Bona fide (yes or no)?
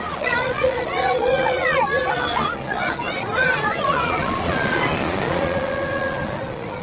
no